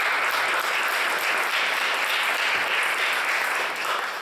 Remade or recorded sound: recorded